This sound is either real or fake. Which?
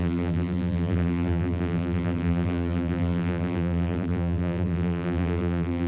fake